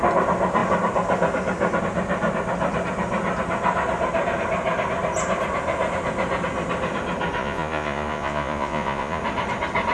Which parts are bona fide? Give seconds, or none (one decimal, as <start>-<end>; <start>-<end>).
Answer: 0.0-7.4; 9.2-9.9